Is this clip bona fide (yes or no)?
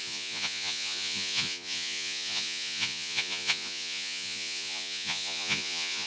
no